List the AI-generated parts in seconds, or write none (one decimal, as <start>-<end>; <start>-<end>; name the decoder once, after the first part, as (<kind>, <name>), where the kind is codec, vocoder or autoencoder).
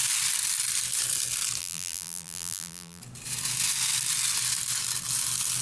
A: 1.6-3.0 (vocoder, BigVGAN v2)